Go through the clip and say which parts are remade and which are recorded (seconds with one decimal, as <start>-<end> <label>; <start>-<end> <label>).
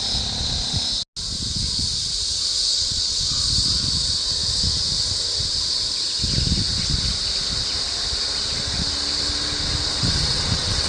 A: 0.0-2.7 recorded; 2.7-3.4 remade; 3.4-10.0 recorded; 10.0-10.9 remade